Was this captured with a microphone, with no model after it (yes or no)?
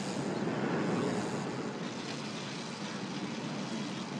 yes